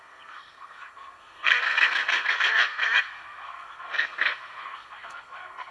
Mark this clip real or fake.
fake